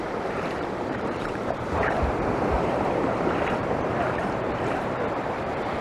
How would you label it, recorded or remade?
remade